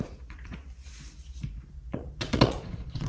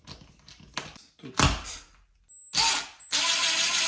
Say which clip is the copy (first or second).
first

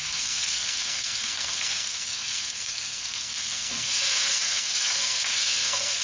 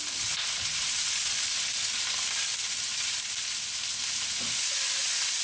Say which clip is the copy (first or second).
first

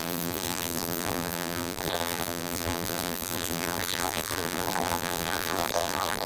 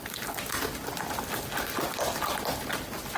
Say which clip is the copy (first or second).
first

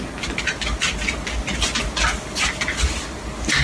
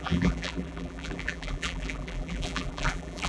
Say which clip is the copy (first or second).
second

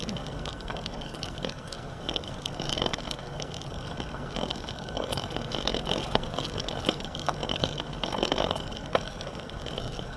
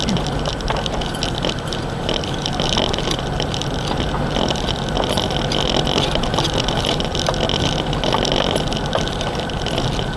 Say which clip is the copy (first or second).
first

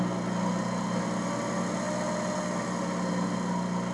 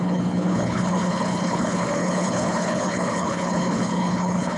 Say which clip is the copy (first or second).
second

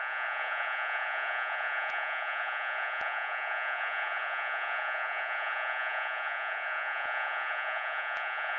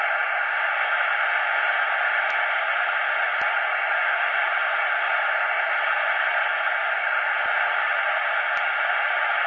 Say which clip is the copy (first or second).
first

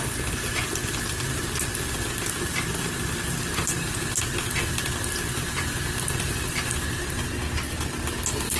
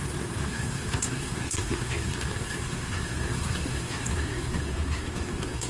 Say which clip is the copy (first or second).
second